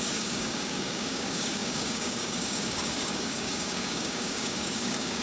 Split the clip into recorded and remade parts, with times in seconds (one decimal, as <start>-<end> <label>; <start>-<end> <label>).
0.0-5.2 remade